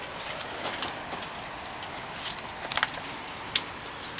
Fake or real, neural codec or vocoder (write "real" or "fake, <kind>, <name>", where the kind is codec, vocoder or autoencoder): real